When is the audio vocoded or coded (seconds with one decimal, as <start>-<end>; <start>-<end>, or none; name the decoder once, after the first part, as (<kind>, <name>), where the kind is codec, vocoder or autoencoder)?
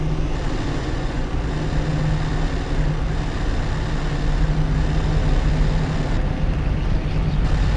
0.8-1.3 (vocoder, Vocos)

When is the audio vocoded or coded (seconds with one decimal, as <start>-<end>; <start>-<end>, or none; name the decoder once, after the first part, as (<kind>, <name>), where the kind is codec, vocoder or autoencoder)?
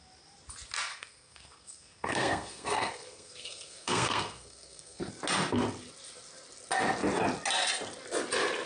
0.9-5.1 (codec, SNAC)